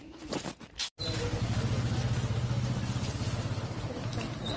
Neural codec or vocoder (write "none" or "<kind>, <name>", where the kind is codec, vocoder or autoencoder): none